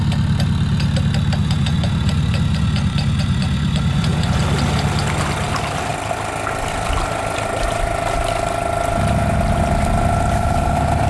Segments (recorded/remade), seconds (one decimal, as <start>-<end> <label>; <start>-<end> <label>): 0.0-1.4 recorded; 1.4-4.4 remade; 4.4-11.1 recorded